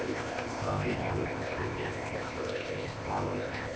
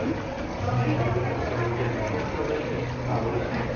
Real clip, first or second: second